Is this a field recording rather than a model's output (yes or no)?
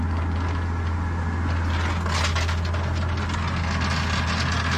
yes